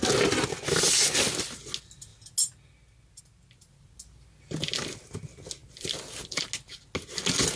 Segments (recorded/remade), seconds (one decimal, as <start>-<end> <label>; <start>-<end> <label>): 0.0-5.6 recorded; 5.6-6.5 remade; 6.5-7.6 recorded

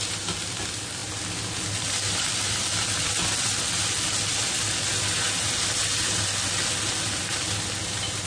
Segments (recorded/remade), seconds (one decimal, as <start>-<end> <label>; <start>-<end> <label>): 0.0-8.3 recorded